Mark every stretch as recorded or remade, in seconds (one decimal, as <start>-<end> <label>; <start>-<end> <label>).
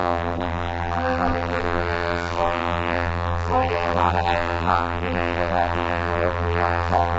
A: 0.0-7.2 remade